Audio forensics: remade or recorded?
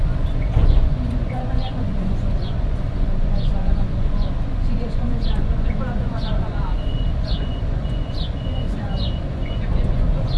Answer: remade